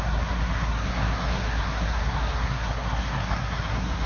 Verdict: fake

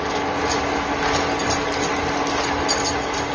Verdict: real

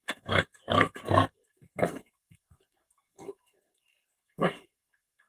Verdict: fake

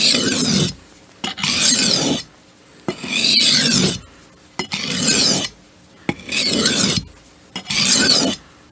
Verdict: real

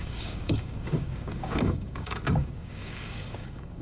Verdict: fake